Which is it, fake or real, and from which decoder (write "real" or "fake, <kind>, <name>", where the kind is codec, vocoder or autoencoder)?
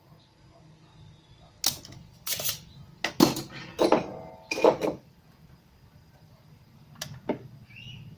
real